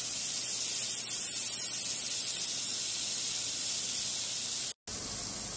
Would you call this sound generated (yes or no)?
no